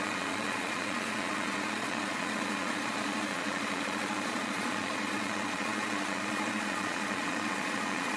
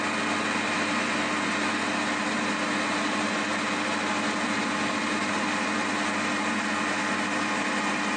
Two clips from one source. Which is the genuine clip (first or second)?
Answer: second